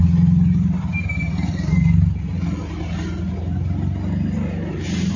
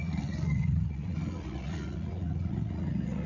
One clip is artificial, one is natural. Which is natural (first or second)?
first